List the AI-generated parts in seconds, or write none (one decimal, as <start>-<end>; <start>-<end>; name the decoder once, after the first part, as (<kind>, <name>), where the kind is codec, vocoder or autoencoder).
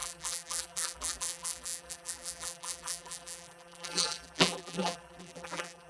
0.0-5.9 (vocoder, BigVGAN v2)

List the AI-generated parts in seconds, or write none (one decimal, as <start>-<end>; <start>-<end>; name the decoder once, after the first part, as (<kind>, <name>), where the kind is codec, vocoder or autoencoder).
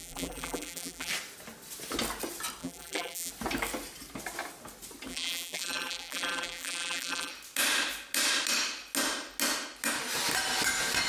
0.0-1.1 (vocoder, BigVGAN v2); 2.6-3.3; 5.1-7.3